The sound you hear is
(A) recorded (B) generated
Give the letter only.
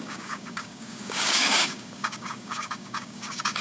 B